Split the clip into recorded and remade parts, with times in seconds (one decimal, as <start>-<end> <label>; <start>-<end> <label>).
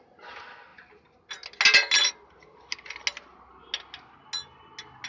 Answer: 0.0-5.1 recorded